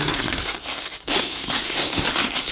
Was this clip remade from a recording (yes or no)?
yes